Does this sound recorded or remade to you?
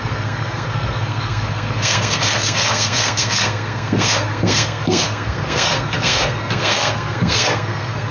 remade